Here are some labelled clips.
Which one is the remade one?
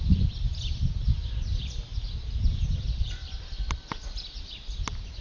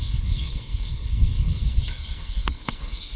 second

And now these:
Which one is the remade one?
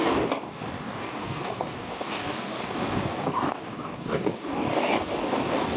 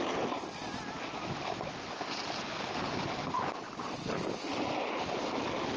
first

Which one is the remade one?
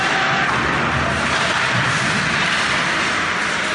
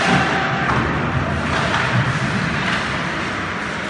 second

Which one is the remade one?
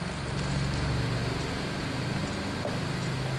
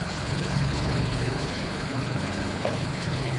second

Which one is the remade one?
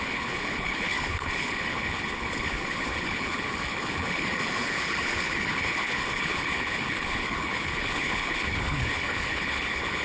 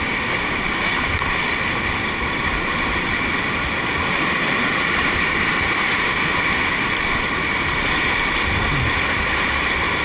first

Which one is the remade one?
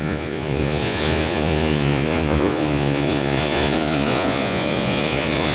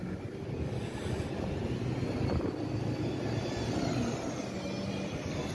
first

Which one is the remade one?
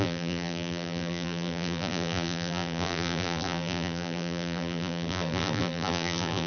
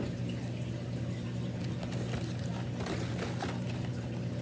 first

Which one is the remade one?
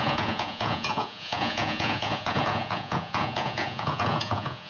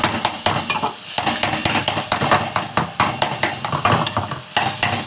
first